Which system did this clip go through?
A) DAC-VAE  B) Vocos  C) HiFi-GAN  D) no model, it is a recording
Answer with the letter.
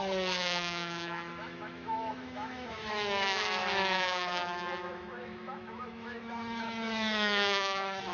A